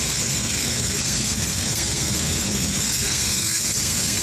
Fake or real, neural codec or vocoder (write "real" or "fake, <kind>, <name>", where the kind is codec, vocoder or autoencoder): fake, codec, SNAC